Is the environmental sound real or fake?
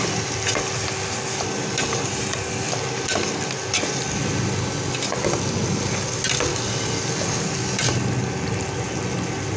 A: real